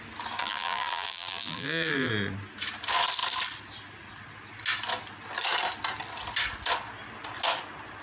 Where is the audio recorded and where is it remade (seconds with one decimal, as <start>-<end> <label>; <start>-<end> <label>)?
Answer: 0.0-0.4 recorded; 0.4-2.1 remade; 2.1-8.0 recorded